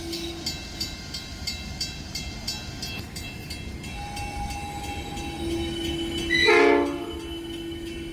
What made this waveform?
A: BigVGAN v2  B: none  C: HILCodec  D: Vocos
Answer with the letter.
B